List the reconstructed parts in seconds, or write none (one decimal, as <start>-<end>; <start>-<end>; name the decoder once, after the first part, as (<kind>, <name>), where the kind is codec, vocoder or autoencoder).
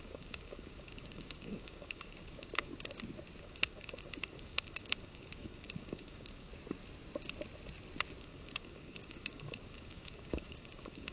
0.0-2.7 (codec, DAC); 3.4-6.5; 8.2-11.1